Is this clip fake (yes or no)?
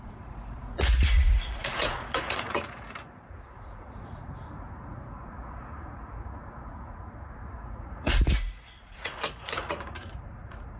yes